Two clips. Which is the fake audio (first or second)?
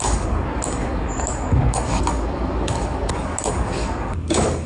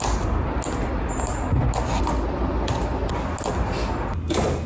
first